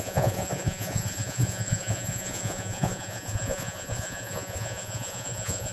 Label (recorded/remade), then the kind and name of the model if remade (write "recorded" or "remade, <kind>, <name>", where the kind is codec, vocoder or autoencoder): remade, vocoder, Vocos